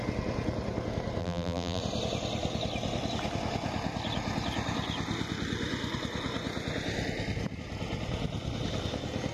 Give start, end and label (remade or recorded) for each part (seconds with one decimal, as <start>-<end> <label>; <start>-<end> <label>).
0.0-1.2 recorded; 1.2-1.8 remade; 1.8-9.3 recorded